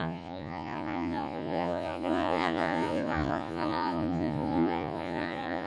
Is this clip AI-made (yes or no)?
yes